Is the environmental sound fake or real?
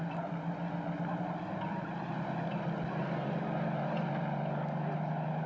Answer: real